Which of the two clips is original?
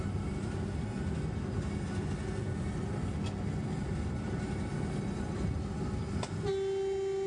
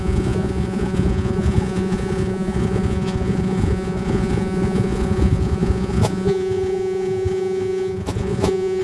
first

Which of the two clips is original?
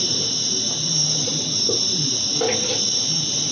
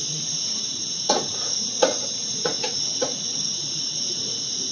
first